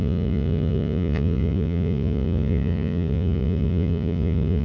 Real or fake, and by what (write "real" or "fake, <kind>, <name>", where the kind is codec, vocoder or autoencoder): fake, vocoder, Vocos